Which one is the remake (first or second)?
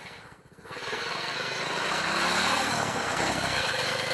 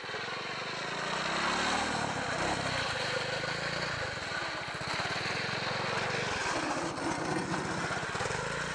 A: first